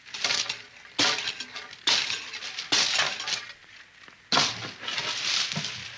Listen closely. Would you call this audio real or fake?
real